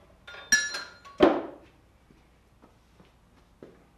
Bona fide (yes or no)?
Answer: yes